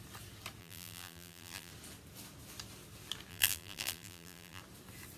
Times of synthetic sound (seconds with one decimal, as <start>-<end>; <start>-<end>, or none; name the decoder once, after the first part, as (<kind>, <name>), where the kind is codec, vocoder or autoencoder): 0.6-1.7 (vocoder, BigVGAN v2); 3.3-4.6